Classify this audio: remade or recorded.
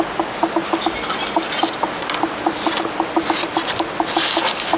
recorded